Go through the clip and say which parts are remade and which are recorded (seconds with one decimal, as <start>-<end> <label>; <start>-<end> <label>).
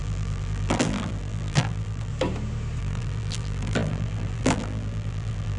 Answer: 0.0-2.1 remade; 2.1-2.8 recorded; 2.8-5.6 remade